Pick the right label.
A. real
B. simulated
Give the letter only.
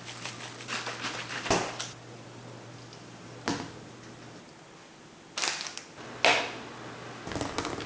A